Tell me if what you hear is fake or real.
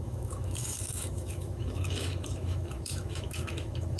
fake